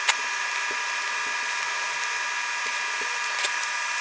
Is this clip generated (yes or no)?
no